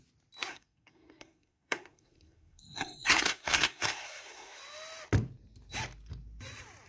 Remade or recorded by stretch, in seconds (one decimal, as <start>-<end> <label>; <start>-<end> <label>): 0.0-0.5 recorded; 0.5-4.6 remade; 4.6-6.9 recorded